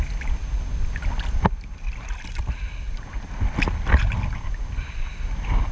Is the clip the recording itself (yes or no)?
yes